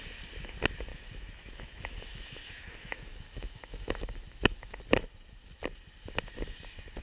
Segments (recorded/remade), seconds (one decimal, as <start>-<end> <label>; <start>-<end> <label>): 0.0-0.9 recorded; 0.9-4.8 remade; 4.8-7.0 recorded